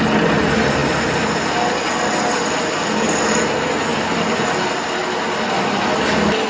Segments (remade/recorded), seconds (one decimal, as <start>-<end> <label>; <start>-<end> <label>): 0.0-6.5 recorded